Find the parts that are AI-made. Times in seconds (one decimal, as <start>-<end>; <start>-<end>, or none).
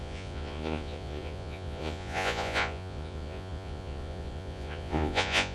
0.0-5.5